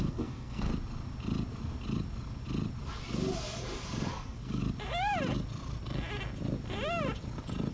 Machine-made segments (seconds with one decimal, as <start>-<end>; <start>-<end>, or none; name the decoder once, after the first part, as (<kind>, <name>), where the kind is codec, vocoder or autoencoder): 0.0-0.7 (codec, SNAC); 4.1-4.6